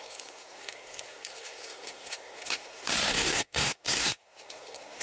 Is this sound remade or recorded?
remade